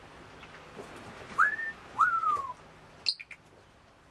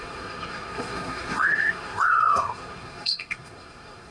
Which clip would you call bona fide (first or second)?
first